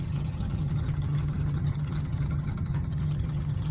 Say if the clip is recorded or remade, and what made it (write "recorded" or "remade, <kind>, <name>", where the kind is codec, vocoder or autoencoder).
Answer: remade, vocoder, HiFi-GAN